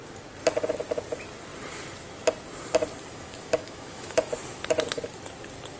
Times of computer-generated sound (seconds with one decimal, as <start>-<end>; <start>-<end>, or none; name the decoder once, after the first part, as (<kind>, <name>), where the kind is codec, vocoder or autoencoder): 3.1-4.3 (autoencoder, DAC-VAE)